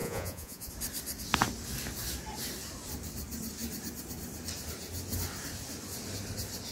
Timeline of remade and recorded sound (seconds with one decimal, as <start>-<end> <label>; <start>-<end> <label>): 0.0-0.7 remade; 0.7-6.7 recorded